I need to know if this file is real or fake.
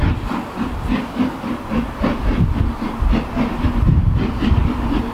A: real